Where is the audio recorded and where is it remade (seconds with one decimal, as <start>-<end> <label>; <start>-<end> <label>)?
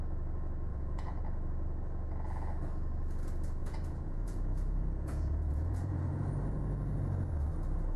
0.0-0.7 recorded; 0.7-1.2 remade; 1.2-3.6 recorded; 3.6-6.2 remade; 6.2-8.0 recorded